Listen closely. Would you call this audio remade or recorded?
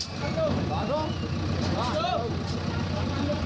recorded